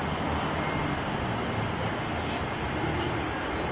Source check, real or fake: real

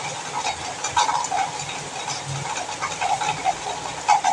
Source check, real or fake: real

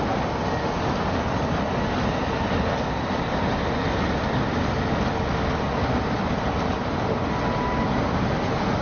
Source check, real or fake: real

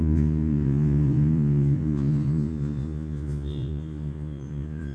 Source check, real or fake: fake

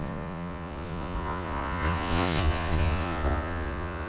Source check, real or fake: fake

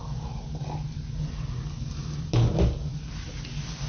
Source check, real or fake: real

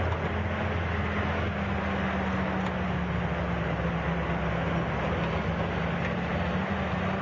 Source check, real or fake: real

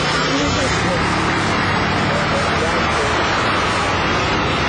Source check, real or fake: real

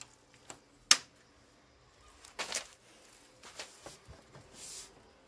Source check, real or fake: real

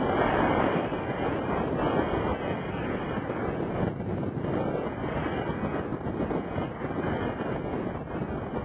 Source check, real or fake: real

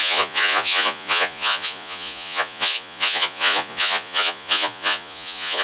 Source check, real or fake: fake